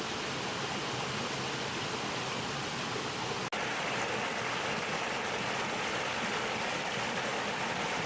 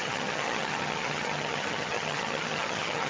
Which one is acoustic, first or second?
first